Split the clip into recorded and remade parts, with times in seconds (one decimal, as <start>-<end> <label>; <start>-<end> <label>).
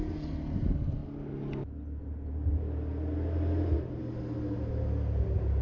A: 0.0-5.6 recorded